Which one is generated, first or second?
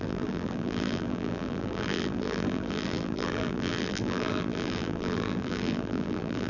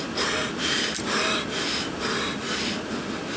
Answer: first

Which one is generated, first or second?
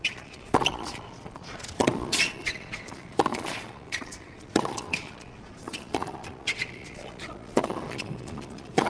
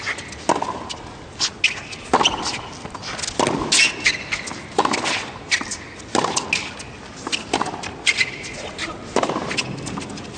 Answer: first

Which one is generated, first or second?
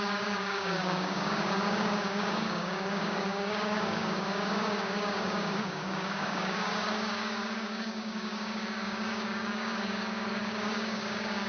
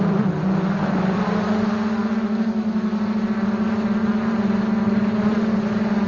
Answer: first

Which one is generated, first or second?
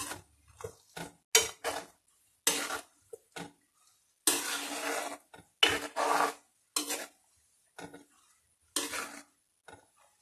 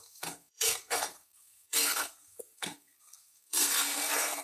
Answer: second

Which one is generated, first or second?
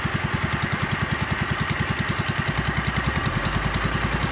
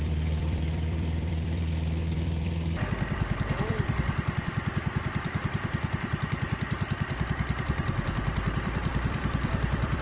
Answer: second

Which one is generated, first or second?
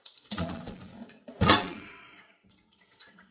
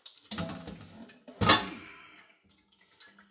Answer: first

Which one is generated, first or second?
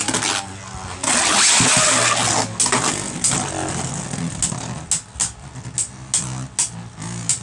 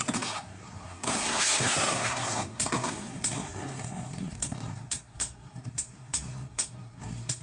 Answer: second